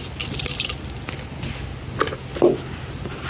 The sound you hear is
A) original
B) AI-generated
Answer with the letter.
A